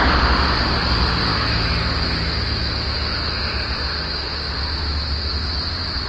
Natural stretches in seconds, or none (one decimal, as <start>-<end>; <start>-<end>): 0.0-1.3; 3.4-3.9